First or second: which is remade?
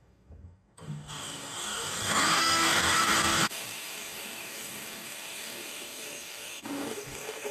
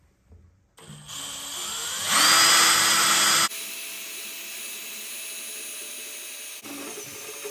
first